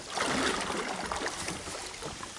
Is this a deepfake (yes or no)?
no